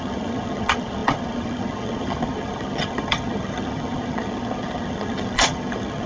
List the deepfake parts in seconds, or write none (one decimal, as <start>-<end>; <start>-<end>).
0.0-6.1